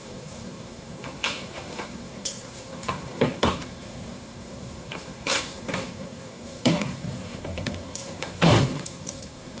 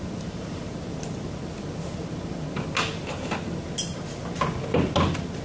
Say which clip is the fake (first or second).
first